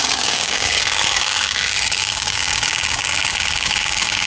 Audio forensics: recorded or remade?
remade